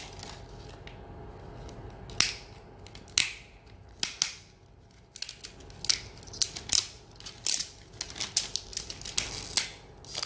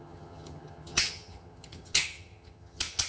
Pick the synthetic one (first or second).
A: second